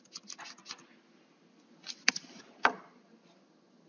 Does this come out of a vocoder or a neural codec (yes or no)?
no